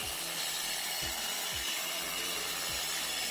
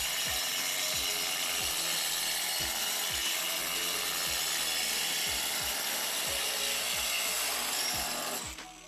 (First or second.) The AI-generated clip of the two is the first